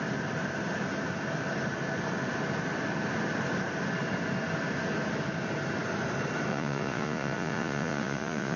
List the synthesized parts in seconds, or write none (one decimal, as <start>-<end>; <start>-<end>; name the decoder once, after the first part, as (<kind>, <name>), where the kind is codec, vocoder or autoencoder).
6.5-8.6 (vocoder, Vocos)